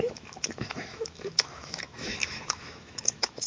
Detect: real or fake fake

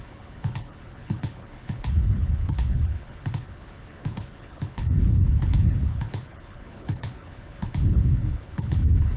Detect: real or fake fake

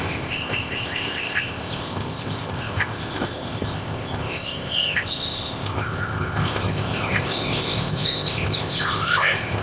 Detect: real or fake fake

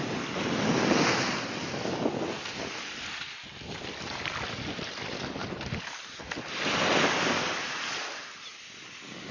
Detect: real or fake real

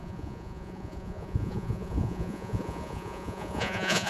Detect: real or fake fake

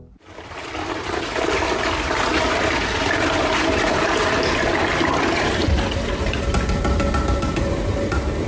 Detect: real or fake real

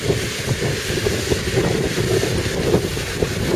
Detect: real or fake real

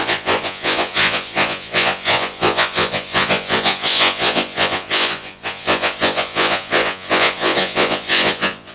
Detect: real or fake fake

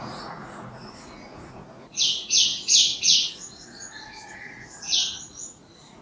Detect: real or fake fake